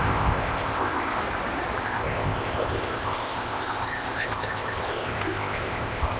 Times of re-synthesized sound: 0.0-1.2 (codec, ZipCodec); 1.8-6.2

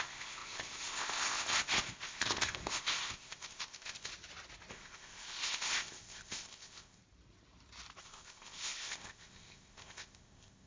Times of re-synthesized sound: 0.0-4.1 (codec, ZipCodec); 4.7-7.0; 8.0-10.7

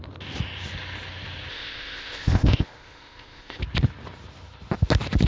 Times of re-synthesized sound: 1.5-3.6 (codec, ZipCodec)

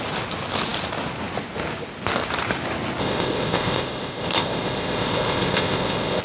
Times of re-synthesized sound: 3.0-6.2 (codec, ZipCodec)

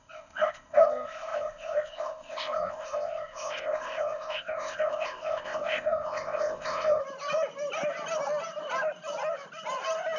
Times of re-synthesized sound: 0.0-7.0 (codec, ZipCodec)

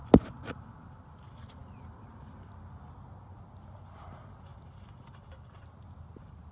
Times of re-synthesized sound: none

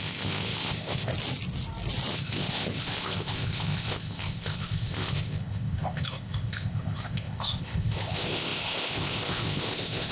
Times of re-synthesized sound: 0.0-1.1 (codec, ZipCodec); 2.1-10.1